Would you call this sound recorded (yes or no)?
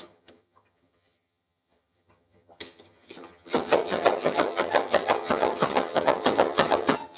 no